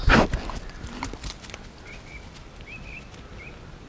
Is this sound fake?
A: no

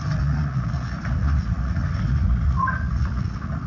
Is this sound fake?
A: yes